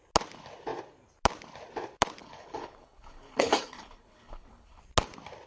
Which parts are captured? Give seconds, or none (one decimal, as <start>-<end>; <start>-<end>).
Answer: 0.0-2.2; 4.8-5.5